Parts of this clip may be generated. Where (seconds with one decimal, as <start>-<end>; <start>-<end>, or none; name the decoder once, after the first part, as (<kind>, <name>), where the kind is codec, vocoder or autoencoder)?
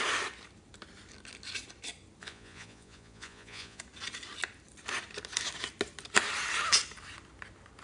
2.2-3.8 (vocoder, Vocos)